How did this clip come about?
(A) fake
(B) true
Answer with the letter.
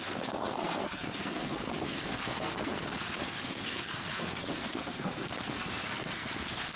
A